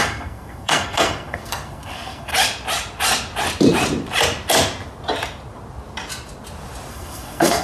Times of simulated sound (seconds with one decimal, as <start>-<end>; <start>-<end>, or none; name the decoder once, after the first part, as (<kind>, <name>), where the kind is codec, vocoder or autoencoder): 0.0-2.3 (codec, SNAC); 6.9-7.6